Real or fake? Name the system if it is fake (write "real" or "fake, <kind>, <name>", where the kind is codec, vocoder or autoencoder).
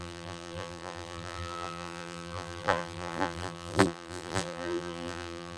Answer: fake, vocoder, BigVGAN v2